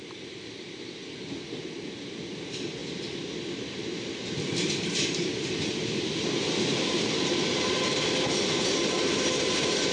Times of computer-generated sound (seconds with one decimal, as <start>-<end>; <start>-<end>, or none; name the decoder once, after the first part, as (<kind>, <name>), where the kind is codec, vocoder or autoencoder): none